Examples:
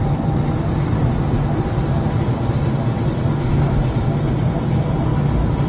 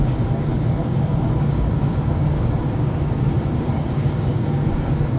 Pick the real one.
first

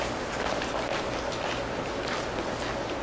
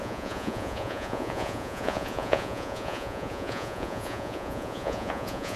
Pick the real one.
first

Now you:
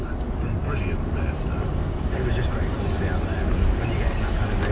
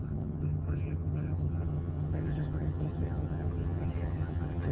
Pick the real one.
first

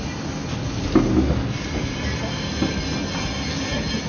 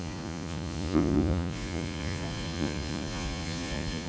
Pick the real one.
first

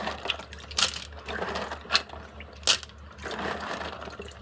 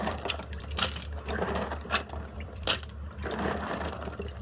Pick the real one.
first